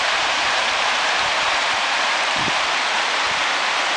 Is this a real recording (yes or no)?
no